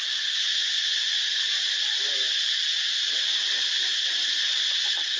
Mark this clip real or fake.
real